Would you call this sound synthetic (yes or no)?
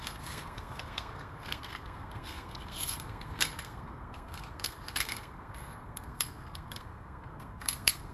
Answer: yes